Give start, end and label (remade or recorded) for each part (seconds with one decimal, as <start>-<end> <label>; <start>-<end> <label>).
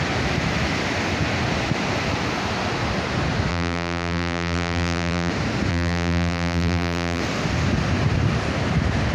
0.0-3.5 recorded; 3.5-5.3 remade; 5.3-5.7 recorded; 5.7-7.2 remade; 7.2-9.1 recorded